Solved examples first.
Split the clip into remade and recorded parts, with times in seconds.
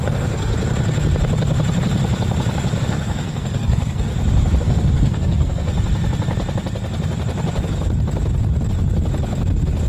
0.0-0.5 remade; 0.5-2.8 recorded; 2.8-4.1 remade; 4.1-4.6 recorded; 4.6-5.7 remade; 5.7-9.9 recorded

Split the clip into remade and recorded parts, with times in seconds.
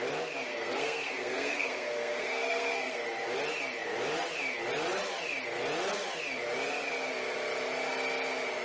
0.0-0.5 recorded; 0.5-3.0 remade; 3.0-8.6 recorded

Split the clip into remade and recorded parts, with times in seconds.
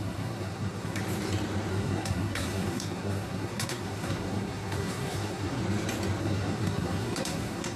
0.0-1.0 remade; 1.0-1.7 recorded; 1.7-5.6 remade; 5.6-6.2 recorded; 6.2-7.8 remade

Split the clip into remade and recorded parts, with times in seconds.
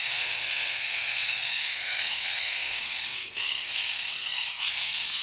0.0-5.2 remade